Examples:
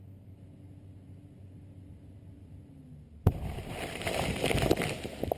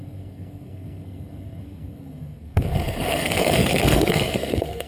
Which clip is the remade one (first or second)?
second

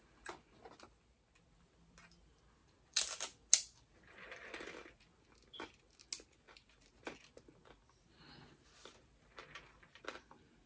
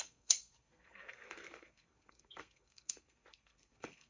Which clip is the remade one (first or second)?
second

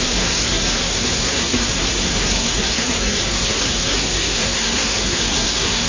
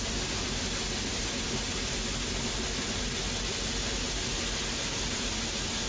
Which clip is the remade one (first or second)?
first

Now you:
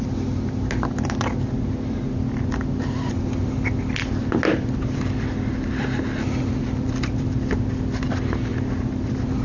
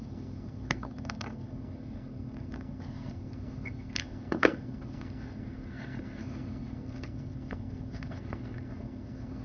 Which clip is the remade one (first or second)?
second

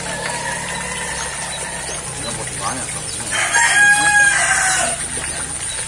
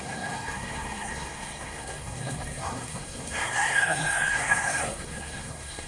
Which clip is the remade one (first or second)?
second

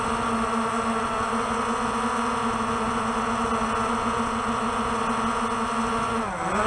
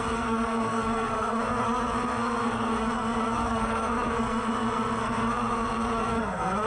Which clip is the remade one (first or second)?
second